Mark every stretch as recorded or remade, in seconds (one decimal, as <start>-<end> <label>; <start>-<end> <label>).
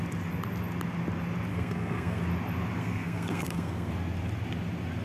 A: 0.0-1.5 recorded; 1.5-2.2 remade; 2.2-2.8 recorded; 2.8-3.9 remade; 3.9-5.0 recorded